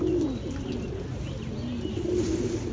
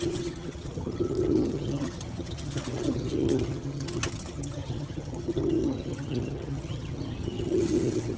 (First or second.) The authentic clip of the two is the first